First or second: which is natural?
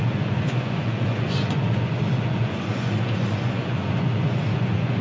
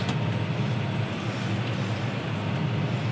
second